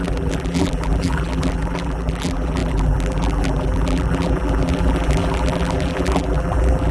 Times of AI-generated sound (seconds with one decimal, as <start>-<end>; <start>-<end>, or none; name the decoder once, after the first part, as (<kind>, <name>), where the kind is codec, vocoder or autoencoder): 0.0-6.9 (vocoder, BigVGAN v2)